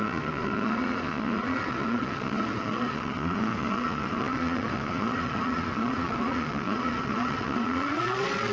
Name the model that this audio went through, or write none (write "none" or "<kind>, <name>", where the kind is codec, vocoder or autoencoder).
vocoder, Vocos